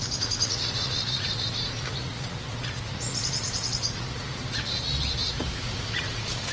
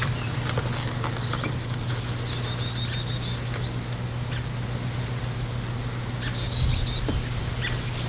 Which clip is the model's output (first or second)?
first